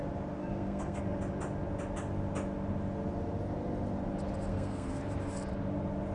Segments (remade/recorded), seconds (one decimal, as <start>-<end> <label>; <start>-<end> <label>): 0.0-0.4 recorded; 0.4-1.0 remade; 1.0-4.5 recorded; 4.5-5.0 remade; 5.0-6.1 recorded